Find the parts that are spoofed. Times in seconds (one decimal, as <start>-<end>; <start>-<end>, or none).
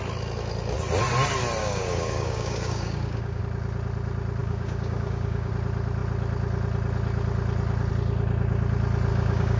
1.6-3.4; 4.4-5.5; 9.1-9.6